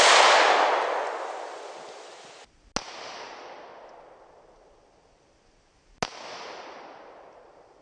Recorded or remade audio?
recorded